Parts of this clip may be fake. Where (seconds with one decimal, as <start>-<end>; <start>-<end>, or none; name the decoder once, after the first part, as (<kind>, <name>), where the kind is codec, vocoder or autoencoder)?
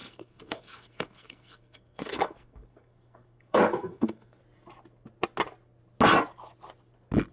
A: 0.0-4.4 (codec, SNAC)